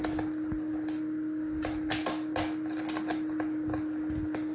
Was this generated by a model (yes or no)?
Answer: no